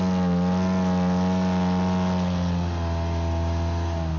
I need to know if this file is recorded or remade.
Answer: recorded